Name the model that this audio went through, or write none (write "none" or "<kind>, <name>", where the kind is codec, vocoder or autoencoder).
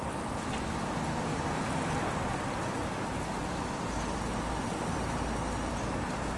none